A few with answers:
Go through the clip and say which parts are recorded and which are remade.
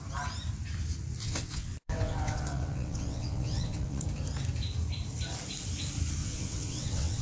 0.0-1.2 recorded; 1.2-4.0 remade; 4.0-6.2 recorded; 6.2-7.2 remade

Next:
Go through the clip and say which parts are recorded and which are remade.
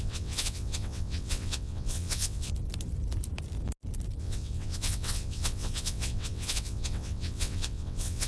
0.0-2.5 remade; 2.5-4.2 recorded; 4.2-8.3 remade